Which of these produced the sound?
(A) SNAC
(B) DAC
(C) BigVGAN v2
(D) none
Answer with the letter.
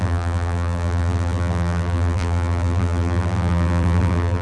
C